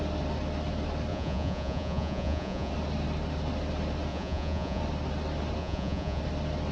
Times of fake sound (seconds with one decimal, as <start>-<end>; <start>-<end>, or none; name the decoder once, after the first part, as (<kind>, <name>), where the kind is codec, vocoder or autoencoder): 1.1-2.7 (vocoder, Vocos); 4.1-4.8; 5.6-6.2